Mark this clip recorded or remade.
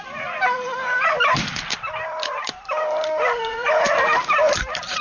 remade